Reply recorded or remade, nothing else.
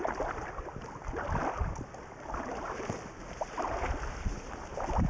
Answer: recorded